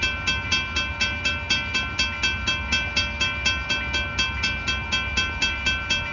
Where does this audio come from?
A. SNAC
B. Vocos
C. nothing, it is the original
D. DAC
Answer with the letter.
C